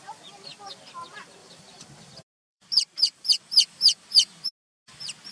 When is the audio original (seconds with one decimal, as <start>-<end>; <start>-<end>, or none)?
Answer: 0.0-1.4; 3.4-5.3